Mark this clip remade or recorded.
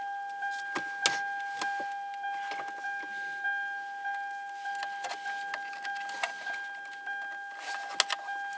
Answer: recorded